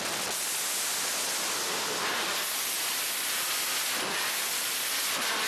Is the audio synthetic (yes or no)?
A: no